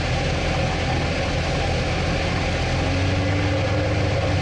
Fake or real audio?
real